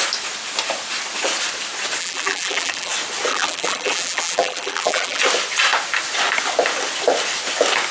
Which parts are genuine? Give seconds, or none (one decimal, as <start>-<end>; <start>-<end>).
0.0-2.0; 2.9-3.3; 5.2-7.9